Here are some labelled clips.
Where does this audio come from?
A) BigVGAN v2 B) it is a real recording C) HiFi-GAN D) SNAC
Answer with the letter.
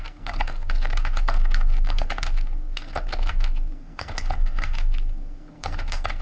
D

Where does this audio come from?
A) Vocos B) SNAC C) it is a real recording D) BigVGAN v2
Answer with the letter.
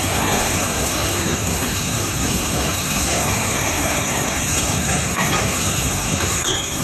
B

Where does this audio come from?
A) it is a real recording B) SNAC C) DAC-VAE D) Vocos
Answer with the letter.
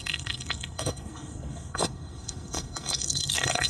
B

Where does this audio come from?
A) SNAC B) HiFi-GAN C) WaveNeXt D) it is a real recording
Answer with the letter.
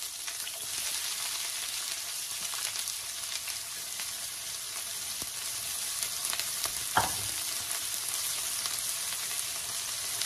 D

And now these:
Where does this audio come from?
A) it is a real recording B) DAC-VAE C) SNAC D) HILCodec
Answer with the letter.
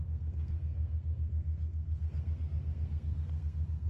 C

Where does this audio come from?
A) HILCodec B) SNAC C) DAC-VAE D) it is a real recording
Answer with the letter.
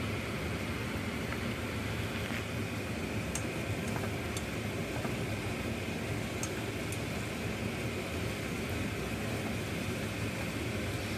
D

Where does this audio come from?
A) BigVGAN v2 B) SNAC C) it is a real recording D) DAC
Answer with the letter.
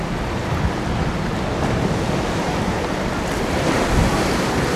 C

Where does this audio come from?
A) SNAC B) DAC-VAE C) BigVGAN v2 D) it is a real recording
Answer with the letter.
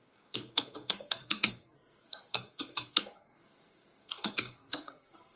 A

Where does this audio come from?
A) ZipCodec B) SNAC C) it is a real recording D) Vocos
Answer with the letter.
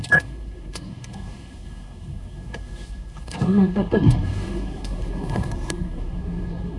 B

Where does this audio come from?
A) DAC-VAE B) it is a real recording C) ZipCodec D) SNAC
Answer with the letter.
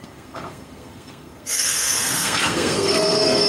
D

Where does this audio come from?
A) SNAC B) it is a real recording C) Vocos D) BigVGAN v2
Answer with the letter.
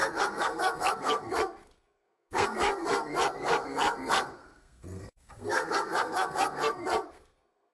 A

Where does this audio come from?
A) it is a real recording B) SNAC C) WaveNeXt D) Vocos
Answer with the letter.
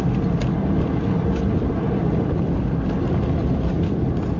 A